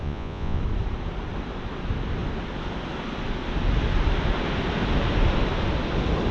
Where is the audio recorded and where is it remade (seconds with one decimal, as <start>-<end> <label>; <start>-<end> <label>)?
0.0-0.6 remade; 0.6-6.3 recorded

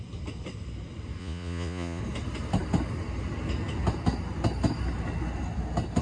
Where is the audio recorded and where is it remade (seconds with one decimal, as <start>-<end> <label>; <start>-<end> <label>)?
0.0-1.2 recorded; 1.2-2.0 remade; 2.0-6.0 recorded

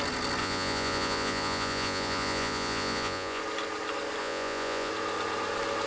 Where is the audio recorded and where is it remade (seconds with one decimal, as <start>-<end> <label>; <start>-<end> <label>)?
0.0-0.4 recorded; 0.4-3.4 remade; 3.4-4.2 recorded; 4.2-4.9 remade; 4.9-5.9 recorded

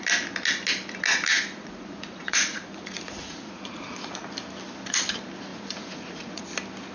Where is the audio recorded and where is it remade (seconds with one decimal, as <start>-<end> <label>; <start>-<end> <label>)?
0.0-1.3 recorded; 1.3-4.3 remade; 4.3-5.5 recorded; 5.5-6.4 remade; 6.4-6.9 recorded

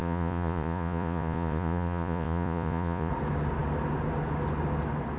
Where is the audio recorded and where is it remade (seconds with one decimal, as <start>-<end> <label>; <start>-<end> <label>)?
0.0-3.1 remade; 3.1-5.2 recorded